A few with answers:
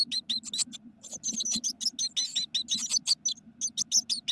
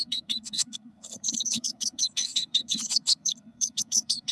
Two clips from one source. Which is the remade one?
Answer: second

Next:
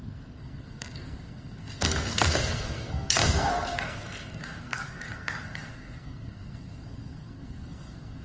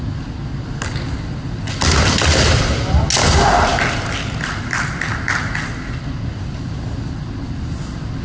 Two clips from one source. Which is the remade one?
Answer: first